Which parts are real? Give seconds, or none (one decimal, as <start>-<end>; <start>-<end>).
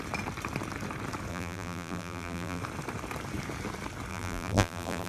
0.0-1.3; 2.6-4.1